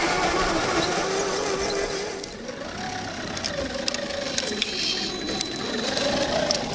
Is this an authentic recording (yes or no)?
yes